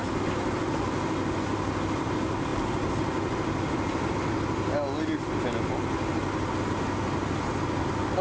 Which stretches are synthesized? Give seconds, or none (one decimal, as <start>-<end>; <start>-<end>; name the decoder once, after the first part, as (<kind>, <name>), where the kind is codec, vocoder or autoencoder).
none